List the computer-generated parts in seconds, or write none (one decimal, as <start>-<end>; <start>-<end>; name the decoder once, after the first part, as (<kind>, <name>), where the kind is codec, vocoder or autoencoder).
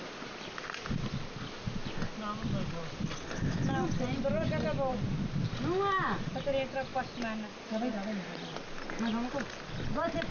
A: none